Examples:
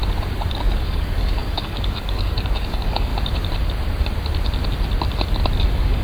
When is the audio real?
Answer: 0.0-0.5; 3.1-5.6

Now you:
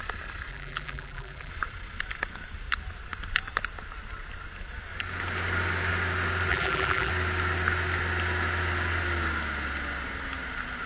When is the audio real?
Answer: 0.0-0.5; 1.5-6.5; 7.1-10.9

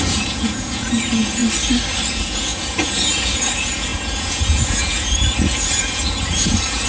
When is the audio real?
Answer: 1.4-2.1

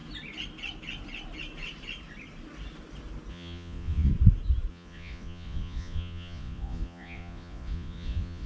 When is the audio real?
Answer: 0.0-3.3; 4.1-4.7

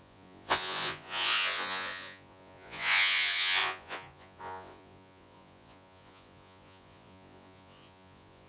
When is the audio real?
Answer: none

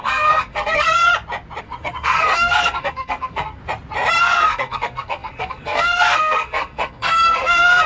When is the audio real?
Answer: 1.1-1.6; 3.6-4.2

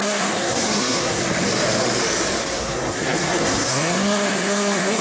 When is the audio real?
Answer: 1.2-2.4

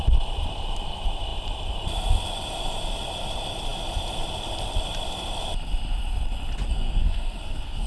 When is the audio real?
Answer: 0.0-6.7